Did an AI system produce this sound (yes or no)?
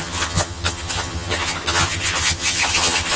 yes